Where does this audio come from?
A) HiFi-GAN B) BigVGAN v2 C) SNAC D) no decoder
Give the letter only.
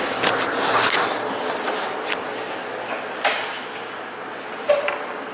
D